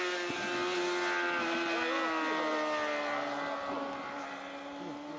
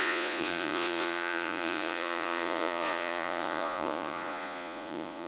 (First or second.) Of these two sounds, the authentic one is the first